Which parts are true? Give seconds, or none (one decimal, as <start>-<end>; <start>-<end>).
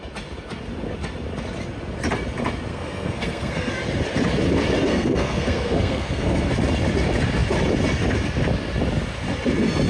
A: 0.0-2.7; 3.7-4.9; 6.5-9.9